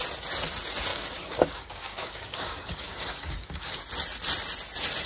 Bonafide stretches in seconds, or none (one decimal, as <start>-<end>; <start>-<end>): 0.0-0.9; 3.8-5.1